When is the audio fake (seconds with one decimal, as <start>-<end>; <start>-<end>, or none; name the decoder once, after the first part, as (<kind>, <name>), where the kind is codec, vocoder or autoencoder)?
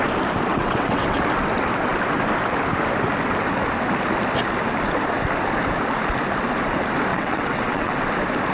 0.5-1.2 (vocoder, WaveNeXt); 7.1-7.9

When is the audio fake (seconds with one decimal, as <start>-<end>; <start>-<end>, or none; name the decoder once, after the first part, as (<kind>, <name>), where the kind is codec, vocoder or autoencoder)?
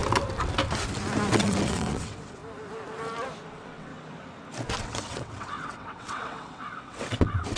1.3-2.4 (vocoder, WaveNeXt); 3.5-3.9; 4.8-7.6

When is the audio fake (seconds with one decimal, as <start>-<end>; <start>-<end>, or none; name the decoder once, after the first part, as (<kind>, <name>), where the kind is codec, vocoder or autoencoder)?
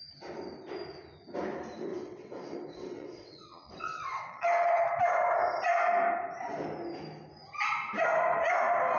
1.9-4.7 (vocoder, WaveNeXt)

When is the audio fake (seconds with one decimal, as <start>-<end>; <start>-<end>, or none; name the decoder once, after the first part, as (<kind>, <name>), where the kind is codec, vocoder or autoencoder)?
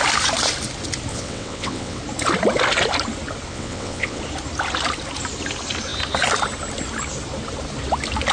1.1-2.0 (vocoder, WaveNeXt); 3.5-4.2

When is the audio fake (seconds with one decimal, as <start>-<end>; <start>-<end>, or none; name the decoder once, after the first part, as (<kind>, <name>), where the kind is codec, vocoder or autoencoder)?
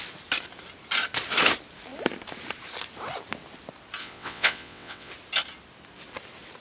4.0-5.1 (vocoder, WaveNeXt)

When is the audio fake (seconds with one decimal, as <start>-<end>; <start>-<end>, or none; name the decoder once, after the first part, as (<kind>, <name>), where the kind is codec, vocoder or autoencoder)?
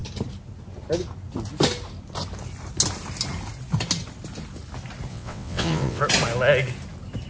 5.1-6.0 (vocoder, WaveNeXt)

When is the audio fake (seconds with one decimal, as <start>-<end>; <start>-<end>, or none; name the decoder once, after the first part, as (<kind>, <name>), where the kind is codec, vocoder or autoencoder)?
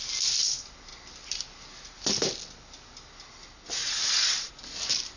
3.8-4.5 (vocoder, WaveNeXt)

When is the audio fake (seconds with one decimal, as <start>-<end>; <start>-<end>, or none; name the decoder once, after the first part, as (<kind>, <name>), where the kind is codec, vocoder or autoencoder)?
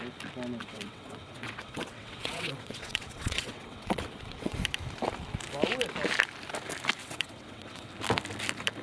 0.6-4.6 (vocoder, WaveNeXt); 7.0-7.9